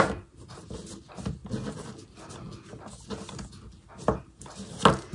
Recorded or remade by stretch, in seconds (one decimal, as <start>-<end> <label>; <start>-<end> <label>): 0.0-5.1 recorded